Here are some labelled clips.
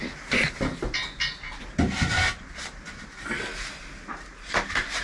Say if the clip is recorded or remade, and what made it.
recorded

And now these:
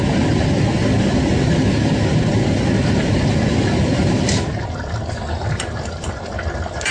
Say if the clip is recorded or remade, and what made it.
recorded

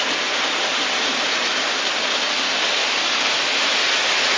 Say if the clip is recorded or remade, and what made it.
recorded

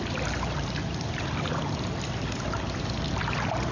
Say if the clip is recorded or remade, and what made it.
remade, vocoder, BigVGAN v2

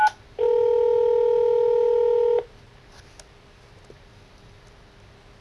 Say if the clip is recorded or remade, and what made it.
recorded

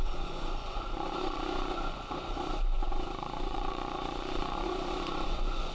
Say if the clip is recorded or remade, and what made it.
remade, vocoder, Vocos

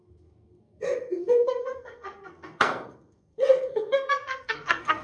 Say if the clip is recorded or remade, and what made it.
remade, codec, SNAC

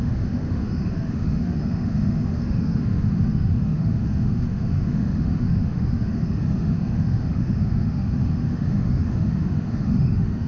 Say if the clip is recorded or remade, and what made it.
remade, autoencoder, DAC-VAE